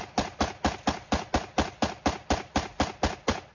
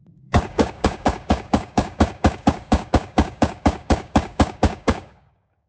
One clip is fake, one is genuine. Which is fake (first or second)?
second